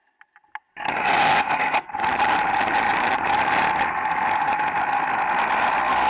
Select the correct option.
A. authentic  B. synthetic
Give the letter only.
A